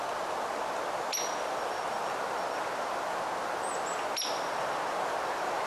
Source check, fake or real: real